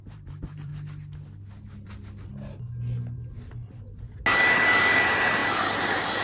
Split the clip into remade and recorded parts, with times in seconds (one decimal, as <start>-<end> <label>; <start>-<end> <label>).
0.0-0.7 remade; 0.7-4.4 recorded; 4.4-5.4 remade; 5.4-6.2 recorded

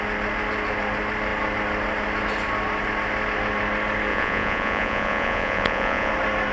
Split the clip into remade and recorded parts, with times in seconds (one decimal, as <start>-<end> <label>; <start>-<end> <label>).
0.0-4.1 recorded; 4.1-6.1 remade; 6.1-6.5 recorded

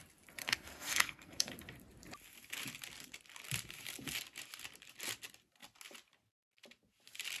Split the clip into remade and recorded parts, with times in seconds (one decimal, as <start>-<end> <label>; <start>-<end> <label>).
0.0-0.4 recorded; 0.4-1.5 remade; 1.5-7.4 recorded

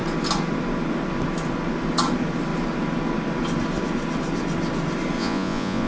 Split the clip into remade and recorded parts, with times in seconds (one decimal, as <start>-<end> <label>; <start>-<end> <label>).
0.0-5.2 recorded; 5.2-5.9 remade

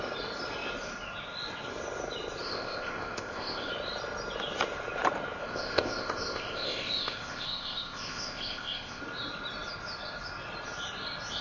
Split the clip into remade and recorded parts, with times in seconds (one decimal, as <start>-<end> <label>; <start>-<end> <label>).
0.0-2.4 recorded; 2.4-3.7 remade; 3.7-5.4 recorded; 5.4-9.0 remade; 9.0-11.4 recorded

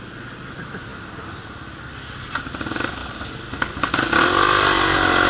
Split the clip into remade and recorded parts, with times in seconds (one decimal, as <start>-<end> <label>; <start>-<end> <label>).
0.0-5.3 recorded

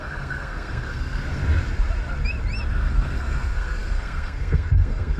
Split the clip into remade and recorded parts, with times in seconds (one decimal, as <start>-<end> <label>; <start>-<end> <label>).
0.0-1.4 remade; 1.4-2.7 recorded; 2.7-5.2 remade

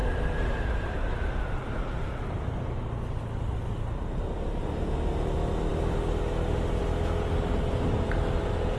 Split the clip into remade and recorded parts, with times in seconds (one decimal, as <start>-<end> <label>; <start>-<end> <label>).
0.0-8.8 recorded